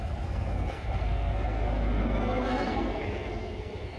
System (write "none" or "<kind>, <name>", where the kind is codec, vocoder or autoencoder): codec, SNAC